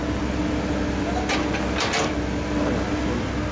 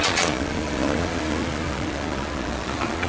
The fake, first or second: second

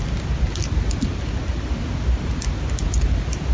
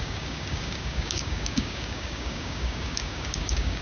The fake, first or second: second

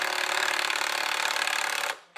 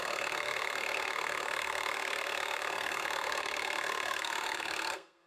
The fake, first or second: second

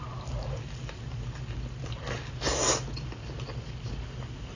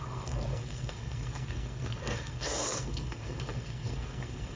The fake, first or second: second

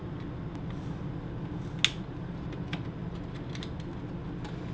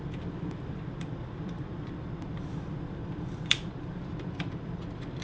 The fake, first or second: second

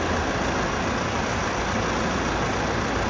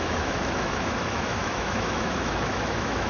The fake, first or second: second